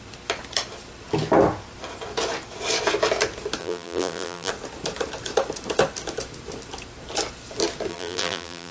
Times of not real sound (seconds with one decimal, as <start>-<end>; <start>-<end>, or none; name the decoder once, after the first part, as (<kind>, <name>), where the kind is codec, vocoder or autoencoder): 3.6-4.5 (vocoder, BigVGAN v2); 7.9-8.7